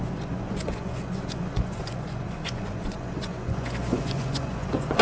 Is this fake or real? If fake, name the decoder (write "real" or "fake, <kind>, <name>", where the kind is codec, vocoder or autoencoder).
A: fake, vocoder, Vocos